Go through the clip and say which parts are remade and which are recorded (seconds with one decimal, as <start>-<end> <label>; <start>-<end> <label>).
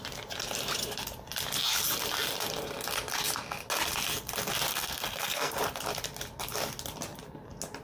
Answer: 0.0-4.7 recorded; 4.7-5.6 remade; 5.6-7.8 recorded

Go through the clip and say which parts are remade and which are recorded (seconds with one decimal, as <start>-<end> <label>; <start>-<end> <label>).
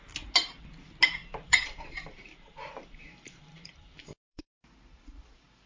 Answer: 0.0-1.2 recorded; 1.2-4.6 remade; 4.6-5.7 recorded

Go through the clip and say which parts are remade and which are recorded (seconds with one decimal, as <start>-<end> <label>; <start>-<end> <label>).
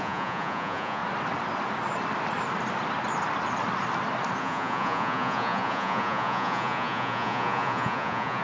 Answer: 0.0-1.0 remade; 1.0-4.4 recorded; 4.4-8.4 remade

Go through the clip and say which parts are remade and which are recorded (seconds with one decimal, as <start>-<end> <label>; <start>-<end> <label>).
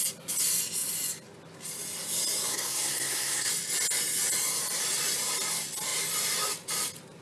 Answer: 0.0-2.5 recorded; 2.5-3.5 remade; 3.5-7.2 recorded